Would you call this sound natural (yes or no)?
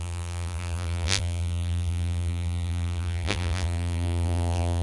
no